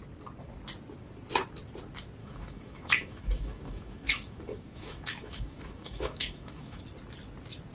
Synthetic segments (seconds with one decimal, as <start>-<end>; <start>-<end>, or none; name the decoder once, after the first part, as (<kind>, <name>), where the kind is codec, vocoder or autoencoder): 2.2-6.8 (autoencoder, DAC-VAE)